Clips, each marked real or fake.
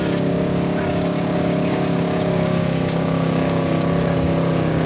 fake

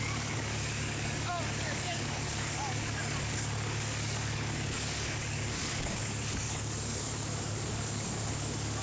fake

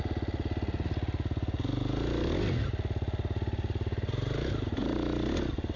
real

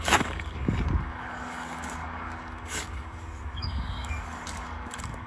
fake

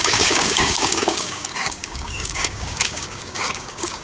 fake